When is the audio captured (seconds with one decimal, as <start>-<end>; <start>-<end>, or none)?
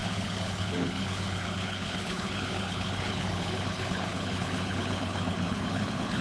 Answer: none